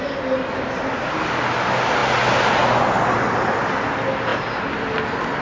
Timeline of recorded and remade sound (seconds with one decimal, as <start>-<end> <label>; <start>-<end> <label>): 0.0-5.4 recorded